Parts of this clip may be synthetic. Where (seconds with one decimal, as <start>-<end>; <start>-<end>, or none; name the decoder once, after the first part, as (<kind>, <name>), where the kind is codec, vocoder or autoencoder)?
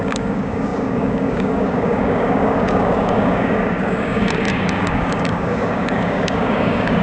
0.0-7.0 (codec, DAC)